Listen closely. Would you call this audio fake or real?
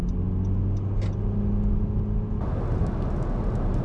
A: real